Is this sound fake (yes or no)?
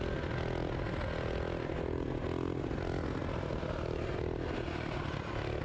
no